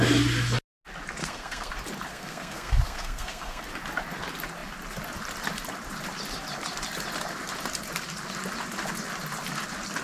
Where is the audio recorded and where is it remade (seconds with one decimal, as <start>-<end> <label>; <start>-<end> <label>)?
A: 0.0-1.2 recorded; 1.2-1.7 remade; 1.7-2.1 recorded; 2.1-3.6 remade; 3.6-10.0 recorded